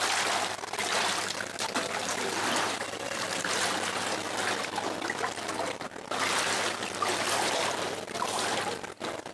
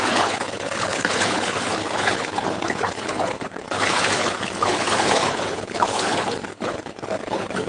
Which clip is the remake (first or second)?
second